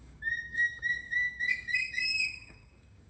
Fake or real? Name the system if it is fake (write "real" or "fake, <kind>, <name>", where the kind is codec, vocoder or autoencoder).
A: fake, codec, DAC